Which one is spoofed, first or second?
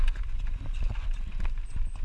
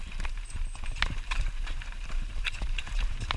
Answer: second